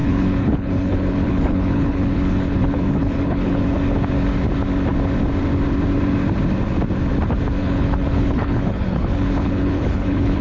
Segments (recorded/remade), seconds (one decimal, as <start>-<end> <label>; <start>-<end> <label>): 0.0-3.6 remade; 3.6-7.6 recorded; 7.6-10.4 remade